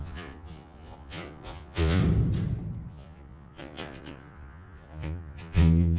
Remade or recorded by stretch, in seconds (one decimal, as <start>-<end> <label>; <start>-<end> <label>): 0.0-2.0 remade; 2.0-2.9 recorded; 2.9-6.0 remade